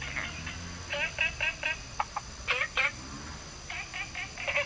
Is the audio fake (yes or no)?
no